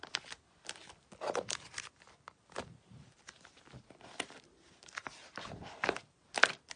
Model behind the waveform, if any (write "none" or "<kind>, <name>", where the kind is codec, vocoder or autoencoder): none